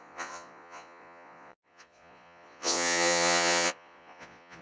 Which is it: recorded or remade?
remade